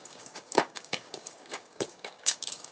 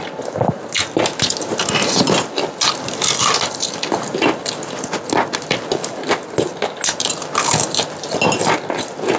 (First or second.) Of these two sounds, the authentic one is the second